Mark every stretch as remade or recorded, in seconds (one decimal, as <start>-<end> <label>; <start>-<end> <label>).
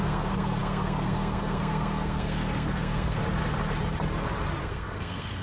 0.0-3.2 remade; 3.2-4.6 recorded; 4.6-5.4 remade